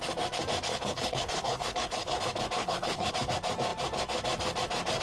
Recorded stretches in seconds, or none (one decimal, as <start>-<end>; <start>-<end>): 0.0-0.7; 2.2-2.6; 3.1-5.0